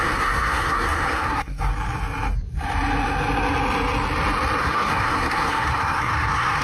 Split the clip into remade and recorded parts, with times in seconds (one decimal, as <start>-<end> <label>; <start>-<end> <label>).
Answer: 0.0-1.7 remade; 1.7-4.6 recorded; 4.6-6.6 remade